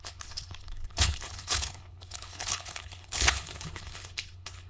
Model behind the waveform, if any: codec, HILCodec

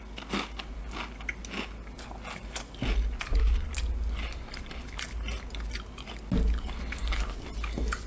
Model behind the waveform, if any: none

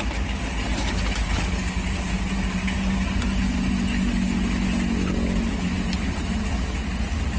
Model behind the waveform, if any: none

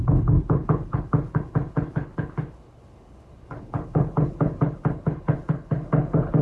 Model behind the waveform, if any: codec, HILCodec